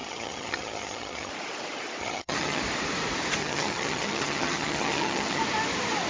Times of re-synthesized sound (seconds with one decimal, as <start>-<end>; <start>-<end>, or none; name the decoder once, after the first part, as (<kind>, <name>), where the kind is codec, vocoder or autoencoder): 0.0-1.3 (vocoder, HiFi-GAN); 2.0-2.6; 3.4-5.4